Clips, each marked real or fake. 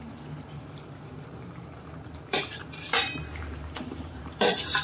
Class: fake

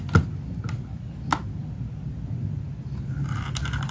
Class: real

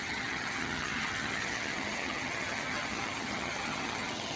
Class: fake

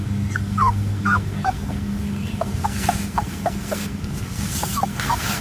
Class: fake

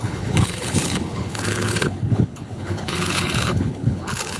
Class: fake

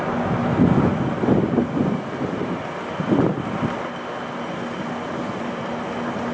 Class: real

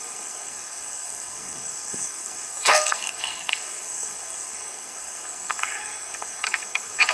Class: fake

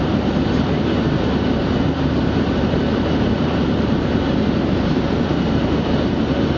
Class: fake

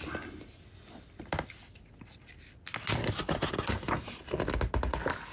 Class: real